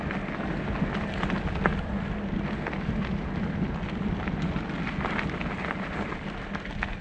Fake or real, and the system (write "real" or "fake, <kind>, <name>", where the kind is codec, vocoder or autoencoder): real